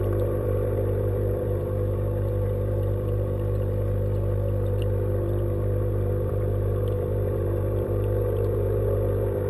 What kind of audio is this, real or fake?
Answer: fake